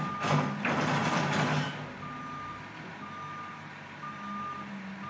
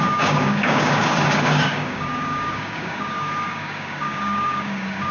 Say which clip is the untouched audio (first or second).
first